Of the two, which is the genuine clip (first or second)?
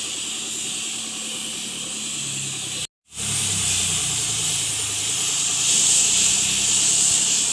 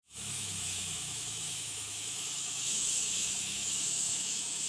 first